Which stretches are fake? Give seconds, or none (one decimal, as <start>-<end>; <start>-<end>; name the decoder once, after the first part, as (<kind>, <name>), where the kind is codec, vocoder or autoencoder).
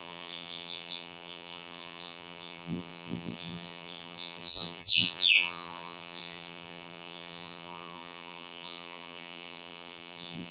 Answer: 0.0-10.5 (vocoder, BigVGAN v2)